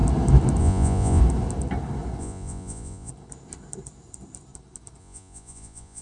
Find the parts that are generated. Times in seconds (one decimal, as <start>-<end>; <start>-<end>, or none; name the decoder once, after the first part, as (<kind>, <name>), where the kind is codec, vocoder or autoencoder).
0.6-1.2 (vocoder, Vocos); 2.2-3.1; 5.0-6.0